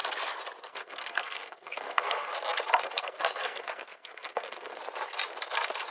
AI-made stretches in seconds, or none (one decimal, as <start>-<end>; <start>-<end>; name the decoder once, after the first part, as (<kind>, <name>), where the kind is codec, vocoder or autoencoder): 0.6-2.3 (codec, SNAC); 2.8-4.8

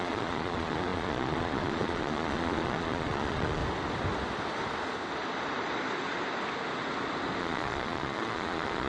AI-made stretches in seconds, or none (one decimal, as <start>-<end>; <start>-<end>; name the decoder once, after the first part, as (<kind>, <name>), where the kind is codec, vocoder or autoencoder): 0.0-3.6 (vocoder, Vocos); 7.4-8.9

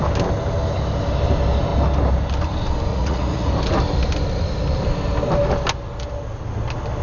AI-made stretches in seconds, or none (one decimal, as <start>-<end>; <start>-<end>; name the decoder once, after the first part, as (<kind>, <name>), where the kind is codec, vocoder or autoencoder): 2.9-3.5 (vocoder, Vocos)

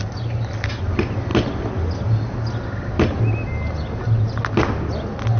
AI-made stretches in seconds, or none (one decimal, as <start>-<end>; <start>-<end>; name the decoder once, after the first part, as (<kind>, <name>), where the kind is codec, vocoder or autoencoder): none